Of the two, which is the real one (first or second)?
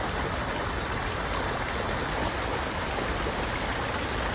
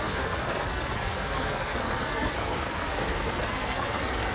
first